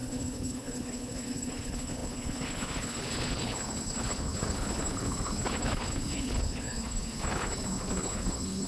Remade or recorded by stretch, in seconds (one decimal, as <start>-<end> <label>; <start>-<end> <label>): 0.0-8.7 remade